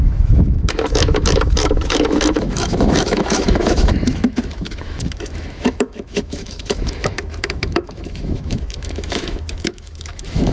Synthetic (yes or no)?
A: yes